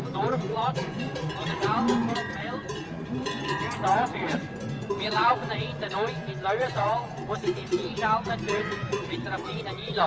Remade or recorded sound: remade